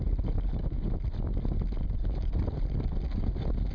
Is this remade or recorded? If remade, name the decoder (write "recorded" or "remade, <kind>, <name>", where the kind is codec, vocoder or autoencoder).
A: recorded